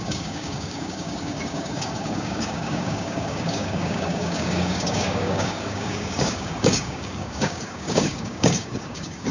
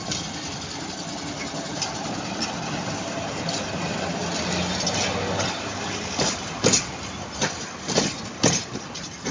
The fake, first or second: first